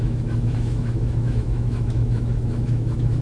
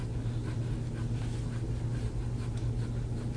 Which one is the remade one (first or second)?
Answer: first